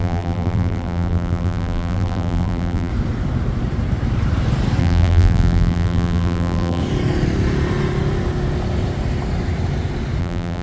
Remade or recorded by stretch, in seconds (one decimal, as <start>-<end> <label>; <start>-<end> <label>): 0.0-2.9 remade; 2.9-4.8 recorded; 4.8-6.8 remade; 6.8-10.2 recorded; 10.2-10.6 remade